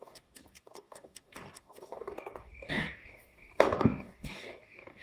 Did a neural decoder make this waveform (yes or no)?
yes